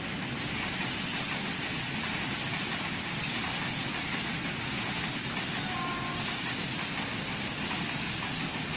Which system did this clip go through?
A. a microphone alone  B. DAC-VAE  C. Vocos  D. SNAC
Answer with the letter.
A